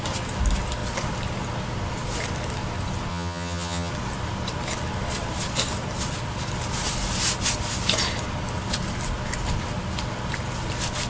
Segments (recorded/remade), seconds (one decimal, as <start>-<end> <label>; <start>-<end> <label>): 0.0-3.1 recorded; 3.1-3.9 remade; 3.9-11.1 recorded